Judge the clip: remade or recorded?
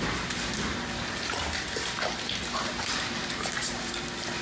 recorded